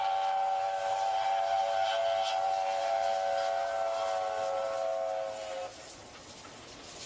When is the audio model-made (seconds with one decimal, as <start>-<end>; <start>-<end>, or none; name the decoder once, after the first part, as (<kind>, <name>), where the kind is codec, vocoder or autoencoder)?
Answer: none